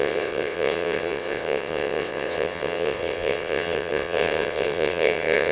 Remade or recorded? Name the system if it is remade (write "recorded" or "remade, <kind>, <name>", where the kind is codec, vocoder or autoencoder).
remade, vocoder, WaveNeXt